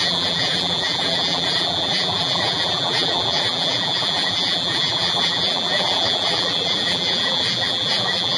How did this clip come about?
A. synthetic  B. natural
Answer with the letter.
A